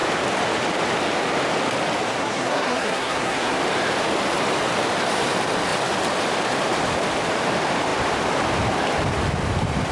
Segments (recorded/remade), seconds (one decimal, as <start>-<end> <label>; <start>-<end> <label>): 0.0-2.2 recorded; 2.2-3.6 remade; 3.6-9.9 recorded